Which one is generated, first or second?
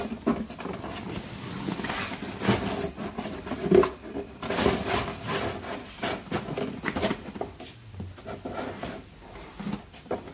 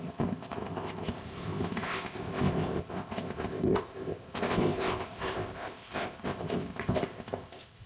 second